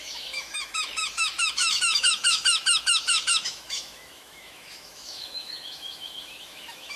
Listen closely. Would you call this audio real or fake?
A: fake